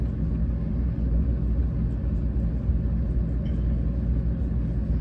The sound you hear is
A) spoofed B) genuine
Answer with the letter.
B